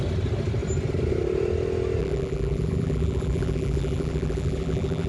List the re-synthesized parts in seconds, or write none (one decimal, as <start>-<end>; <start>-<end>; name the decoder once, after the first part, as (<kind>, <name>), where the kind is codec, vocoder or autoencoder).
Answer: 2.0-5.1 (vocoder, BigVGAN v2)